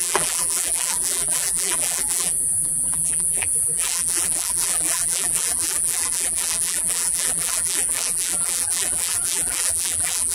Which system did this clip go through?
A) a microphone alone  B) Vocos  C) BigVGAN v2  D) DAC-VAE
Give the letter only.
C